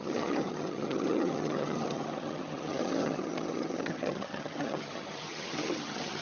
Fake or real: fake